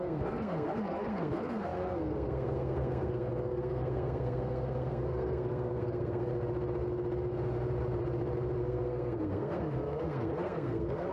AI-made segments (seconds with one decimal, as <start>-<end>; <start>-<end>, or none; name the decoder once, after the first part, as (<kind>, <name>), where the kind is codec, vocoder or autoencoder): 0.0-6.3 (codec, SNAC); 8.6-11.1